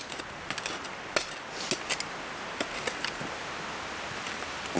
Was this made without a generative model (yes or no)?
yes